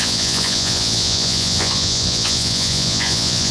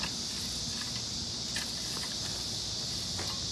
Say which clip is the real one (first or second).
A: second